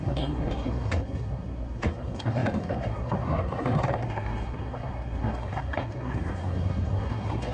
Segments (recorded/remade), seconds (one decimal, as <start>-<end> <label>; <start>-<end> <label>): 0.0-7.5 remade